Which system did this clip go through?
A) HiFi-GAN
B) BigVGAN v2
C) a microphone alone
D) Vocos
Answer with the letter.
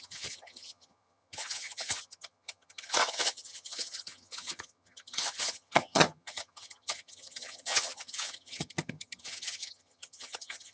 A